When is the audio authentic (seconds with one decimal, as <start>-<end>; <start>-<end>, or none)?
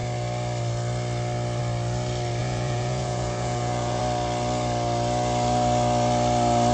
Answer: 0.0-2.4; 4.0-6.7